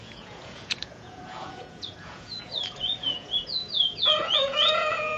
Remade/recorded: remade